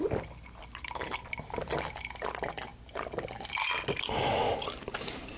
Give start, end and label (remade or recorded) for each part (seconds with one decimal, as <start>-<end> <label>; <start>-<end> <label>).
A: 0.0-5.4 recorded

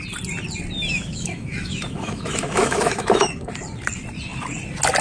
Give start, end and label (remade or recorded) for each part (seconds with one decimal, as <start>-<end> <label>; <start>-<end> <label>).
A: 0.0-0.9 recorded; 0.9-3.5 remade; 3.5-5.0 recorded